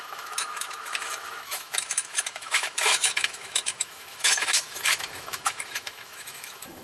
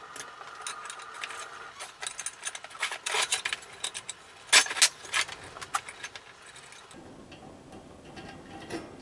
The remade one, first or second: first